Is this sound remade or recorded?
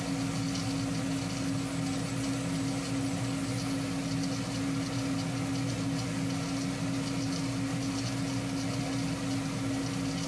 recorded